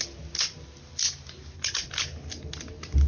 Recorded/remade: recorded